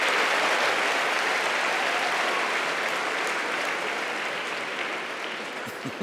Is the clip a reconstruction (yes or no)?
no